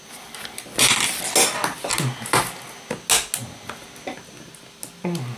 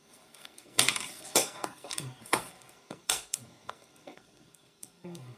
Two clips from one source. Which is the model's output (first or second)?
second